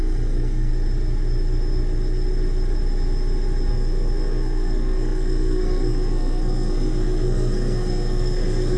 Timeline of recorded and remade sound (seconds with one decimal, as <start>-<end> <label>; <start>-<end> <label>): 0.0-0.7 remade; 0.7-3.7 recorded; 3.7-8.8 remade